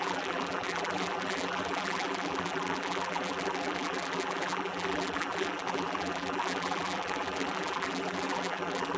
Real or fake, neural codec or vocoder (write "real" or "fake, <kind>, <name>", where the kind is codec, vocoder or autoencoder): fake, vocoder, BigVGAN v2